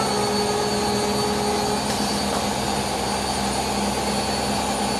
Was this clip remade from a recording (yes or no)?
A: no